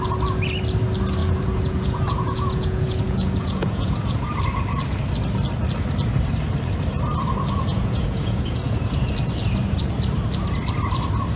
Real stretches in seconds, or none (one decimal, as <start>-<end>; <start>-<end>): 0.0-1.2; 4.4-7.7; 9.1-11.4

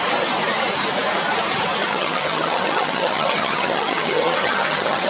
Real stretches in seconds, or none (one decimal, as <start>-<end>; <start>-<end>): 0.0-1.8

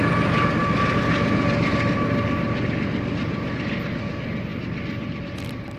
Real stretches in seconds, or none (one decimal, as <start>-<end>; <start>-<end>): 0.0-5.8

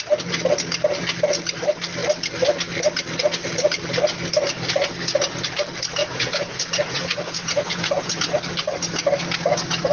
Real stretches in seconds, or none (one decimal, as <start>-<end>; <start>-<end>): 0.0-6.0; 8.2-9.9

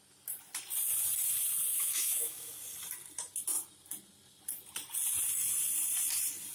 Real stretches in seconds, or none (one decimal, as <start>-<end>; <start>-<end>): 0.0-1.7; 2.5-6.5

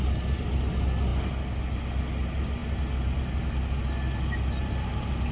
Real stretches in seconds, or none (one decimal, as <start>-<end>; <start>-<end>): 0.0-5.3